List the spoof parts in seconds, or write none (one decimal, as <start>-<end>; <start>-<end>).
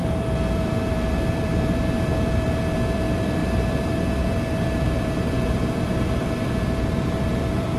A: 0.0-7.8